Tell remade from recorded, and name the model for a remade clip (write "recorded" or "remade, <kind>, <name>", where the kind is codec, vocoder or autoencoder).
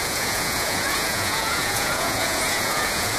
remade, vocoder, Vocos